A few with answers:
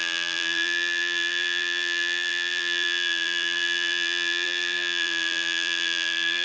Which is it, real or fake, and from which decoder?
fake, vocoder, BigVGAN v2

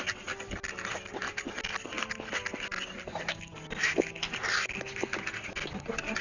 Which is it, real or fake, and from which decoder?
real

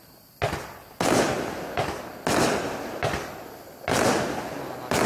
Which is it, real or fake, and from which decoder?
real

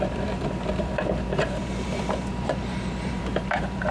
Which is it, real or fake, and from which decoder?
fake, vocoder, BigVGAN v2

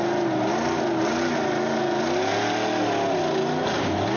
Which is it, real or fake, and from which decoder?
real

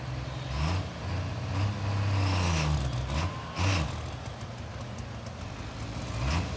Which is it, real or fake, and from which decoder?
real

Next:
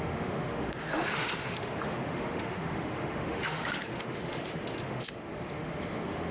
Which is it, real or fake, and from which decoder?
fake, autoencoder, DAC-VAE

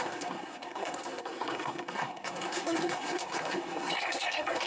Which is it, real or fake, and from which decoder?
fake, codec, SNAC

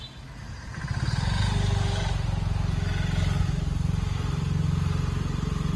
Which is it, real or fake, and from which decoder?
real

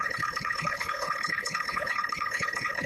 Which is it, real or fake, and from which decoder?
fake, codec, HILCodec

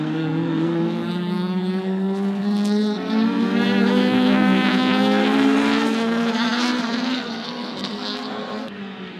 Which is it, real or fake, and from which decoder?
fake, codec, SNAC